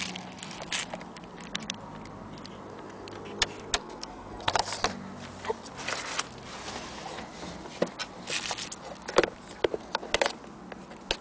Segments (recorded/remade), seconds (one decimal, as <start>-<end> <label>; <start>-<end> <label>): 0.0-3.8 recorded; 3.8-4.5 remade; 4.5-11.2 recorded